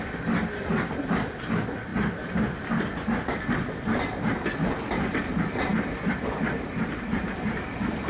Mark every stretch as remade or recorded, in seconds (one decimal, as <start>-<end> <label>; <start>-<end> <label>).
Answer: 0.0-8.1 recorded